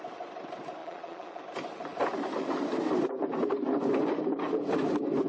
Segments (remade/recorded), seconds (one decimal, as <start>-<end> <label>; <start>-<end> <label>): 0.0-0.8 recorded; 0.8-1.4 remade; 1.4-5.3 recorded